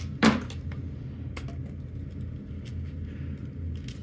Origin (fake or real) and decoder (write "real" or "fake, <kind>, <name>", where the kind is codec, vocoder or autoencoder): real